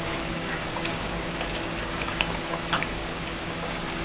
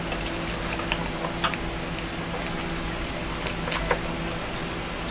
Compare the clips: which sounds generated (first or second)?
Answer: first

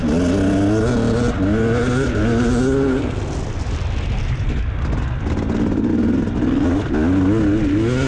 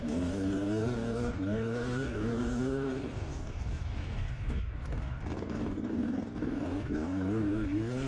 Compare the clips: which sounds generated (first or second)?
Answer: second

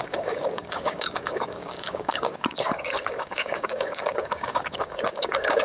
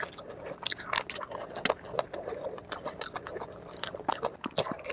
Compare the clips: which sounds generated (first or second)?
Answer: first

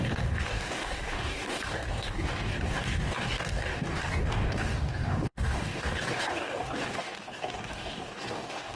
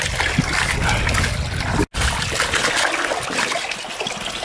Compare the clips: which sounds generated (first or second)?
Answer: first